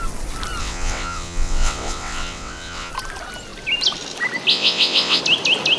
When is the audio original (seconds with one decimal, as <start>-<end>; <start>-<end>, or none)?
0.0-0.6; 2.9-4.5; 5.2-5.8